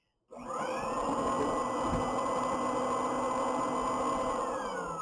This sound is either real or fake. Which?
real